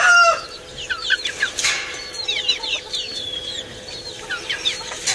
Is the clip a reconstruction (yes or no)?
yes